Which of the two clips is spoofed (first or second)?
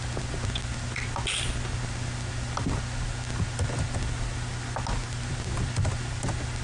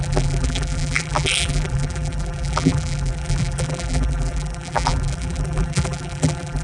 second